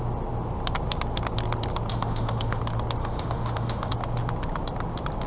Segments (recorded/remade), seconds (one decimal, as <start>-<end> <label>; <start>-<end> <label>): 0.0-1.9 recorded; 1.9-2.6 remade; 2.6-3.0 recorded; 3.0-3.9 remade; 3.9-5.3 recorded